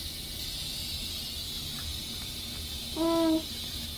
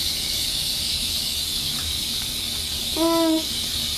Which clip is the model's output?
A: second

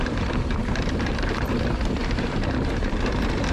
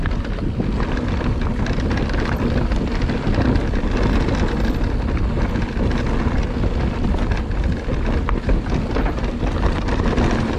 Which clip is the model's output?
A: first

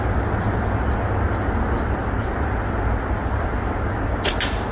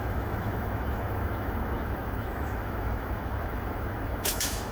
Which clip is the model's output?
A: second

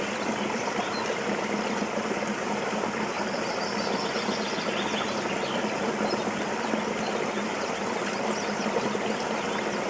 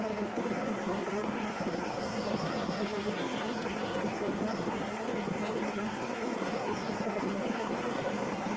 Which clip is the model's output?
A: second